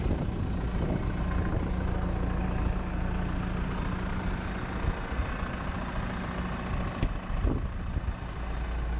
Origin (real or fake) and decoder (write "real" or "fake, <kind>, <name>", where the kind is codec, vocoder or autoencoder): real